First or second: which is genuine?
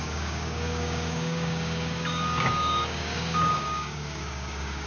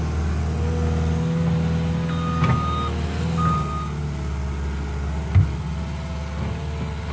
second